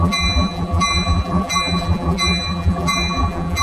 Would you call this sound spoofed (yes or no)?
yes